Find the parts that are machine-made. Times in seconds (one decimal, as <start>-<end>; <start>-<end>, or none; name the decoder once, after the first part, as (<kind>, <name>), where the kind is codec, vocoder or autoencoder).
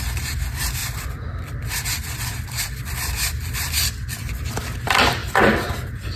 0.8-4.5 (vocoder, BigVGAN v2); 5.2-6.2